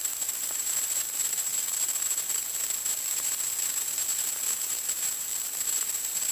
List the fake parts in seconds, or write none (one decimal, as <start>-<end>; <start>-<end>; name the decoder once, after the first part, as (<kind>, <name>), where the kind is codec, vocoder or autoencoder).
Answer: 0.0-6.3 (vocoder, BigVGAN v2)